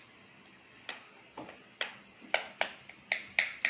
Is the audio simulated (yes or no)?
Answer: no